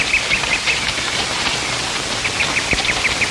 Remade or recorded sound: recorded